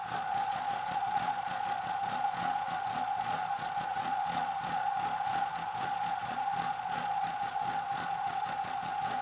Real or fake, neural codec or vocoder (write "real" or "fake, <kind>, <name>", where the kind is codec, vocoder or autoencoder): fake, vocoder, Vocos